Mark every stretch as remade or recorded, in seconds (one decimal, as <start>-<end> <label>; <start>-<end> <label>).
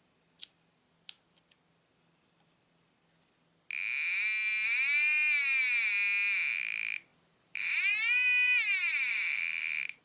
0.0-7.1 recorded; 7.1-10.0 remade